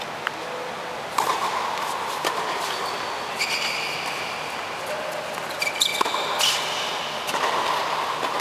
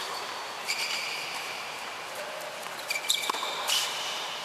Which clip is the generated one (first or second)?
second